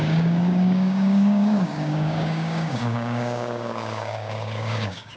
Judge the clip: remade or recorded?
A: remade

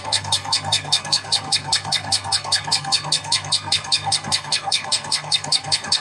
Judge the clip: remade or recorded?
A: remade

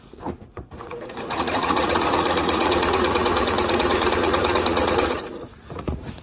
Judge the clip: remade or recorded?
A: remade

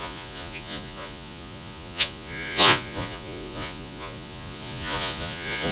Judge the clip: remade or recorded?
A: remade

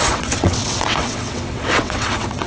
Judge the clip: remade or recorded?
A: remade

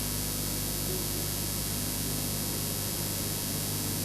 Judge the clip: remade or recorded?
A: recorded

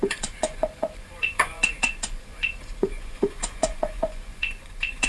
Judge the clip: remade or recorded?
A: remade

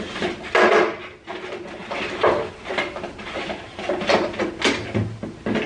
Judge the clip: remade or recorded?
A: recorded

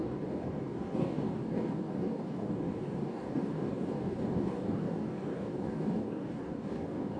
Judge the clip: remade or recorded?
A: remade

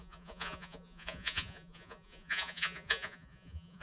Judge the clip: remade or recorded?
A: remade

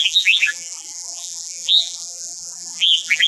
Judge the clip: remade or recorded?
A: remade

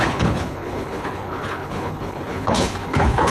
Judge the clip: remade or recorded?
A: remade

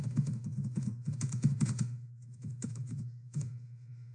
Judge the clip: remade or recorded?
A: remade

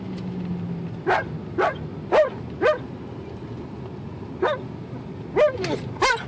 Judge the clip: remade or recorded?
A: recorded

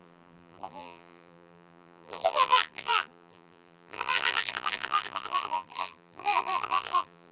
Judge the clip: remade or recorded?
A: remade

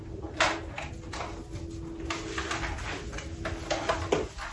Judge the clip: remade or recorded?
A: recorded